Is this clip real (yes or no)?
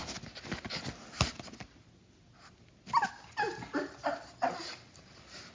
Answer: yes